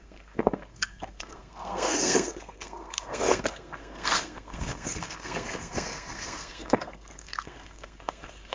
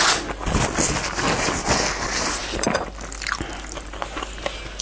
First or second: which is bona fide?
second